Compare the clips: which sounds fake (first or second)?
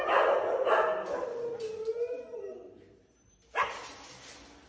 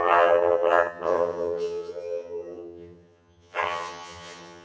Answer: second